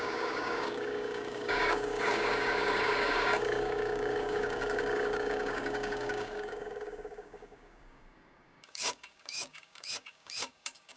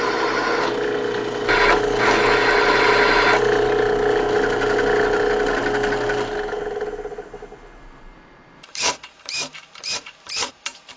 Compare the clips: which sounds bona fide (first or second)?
second